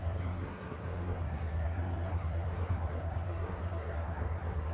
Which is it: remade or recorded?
remade